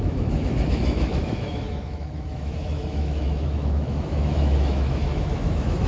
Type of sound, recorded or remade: remade